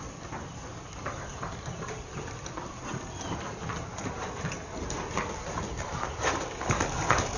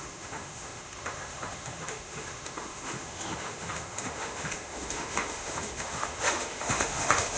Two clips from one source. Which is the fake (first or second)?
second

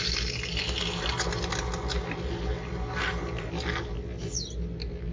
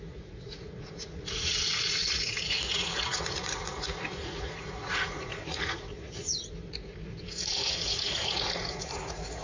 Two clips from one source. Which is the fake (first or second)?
second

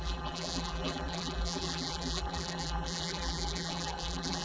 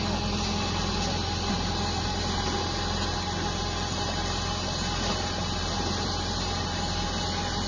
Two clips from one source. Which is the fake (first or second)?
first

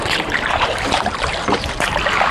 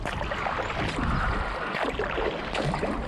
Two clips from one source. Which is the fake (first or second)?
first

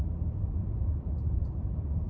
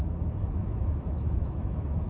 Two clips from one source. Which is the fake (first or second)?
second